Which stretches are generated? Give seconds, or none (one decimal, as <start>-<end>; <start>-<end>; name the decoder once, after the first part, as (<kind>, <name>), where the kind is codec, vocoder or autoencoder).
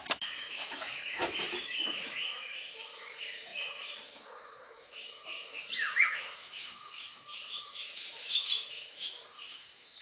0.0-10.0 (autoencoder, DAC-VAE)